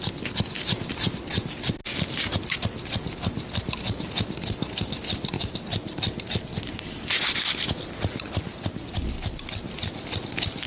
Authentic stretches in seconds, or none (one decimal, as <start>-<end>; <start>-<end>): 0.0-10.7